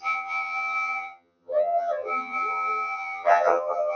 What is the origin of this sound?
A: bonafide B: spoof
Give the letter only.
B